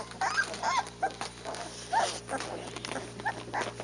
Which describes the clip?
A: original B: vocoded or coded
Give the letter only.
A